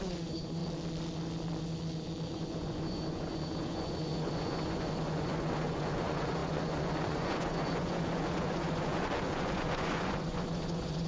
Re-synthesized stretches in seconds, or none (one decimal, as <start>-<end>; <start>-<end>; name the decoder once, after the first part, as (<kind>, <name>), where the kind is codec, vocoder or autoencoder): 0.0-0.6 (vocoder, Vocos); 2.3-11.1